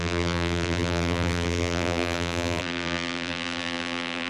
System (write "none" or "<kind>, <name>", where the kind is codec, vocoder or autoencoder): vocoder, BigVGAN v2